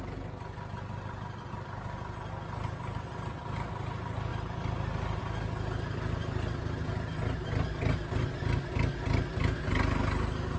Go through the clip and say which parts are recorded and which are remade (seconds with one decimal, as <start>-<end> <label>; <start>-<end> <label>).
0.0-10.6 recorded